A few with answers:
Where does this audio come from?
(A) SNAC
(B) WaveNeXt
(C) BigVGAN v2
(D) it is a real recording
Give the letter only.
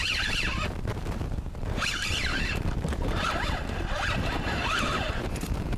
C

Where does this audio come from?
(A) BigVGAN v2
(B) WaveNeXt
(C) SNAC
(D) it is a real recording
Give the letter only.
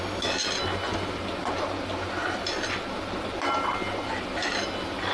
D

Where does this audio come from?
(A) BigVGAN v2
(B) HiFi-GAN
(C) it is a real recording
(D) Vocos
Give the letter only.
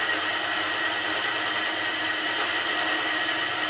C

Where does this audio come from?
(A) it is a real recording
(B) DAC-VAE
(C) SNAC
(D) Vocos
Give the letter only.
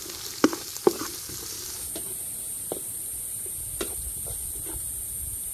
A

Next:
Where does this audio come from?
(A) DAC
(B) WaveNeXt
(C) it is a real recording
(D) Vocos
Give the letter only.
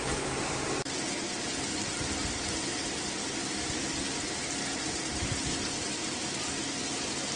C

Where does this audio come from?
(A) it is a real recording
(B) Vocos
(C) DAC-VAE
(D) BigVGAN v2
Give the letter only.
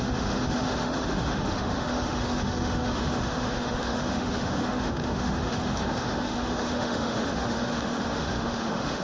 C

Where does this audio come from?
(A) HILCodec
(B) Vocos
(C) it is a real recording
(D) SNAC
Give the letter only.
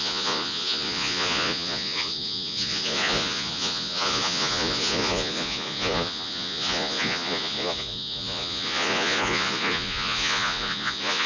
B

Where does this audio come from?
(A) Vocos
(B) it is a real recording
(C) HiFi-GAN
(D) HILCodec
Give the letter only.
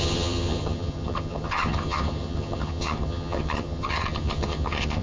C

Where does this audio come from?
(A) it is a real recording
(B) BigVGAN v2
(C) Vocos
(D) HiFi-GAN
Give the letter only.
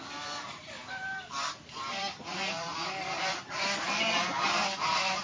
B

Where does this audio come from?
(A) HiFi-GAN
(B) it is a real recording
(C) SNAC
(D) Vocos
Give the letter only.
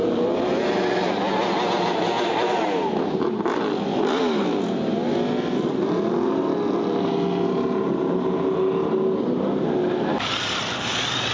B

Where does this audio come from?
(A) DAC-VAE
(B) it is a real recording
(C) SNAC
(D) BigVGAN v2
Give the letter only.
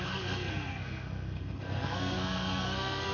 C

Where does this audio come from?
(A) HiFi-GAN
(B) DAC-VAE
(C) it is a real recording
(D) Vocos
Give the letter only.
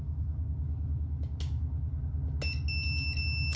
C